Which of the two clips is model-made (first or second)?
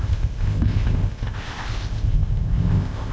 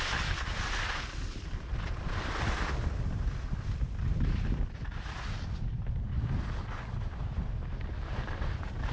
first